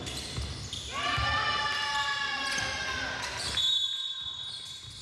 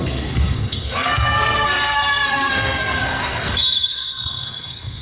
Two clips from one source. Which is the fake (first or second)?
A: second